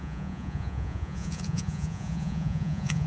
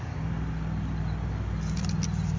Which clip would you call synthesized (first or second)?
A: first